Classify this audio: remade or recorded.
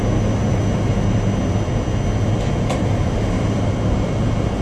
recorded